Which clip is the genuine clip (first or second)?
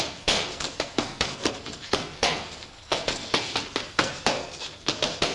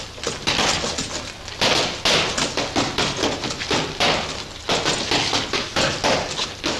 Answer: second